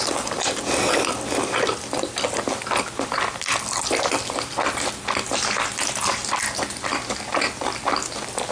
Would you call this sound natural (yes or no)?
yes